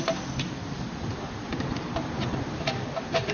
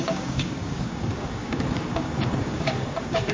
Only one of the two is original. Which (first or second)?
first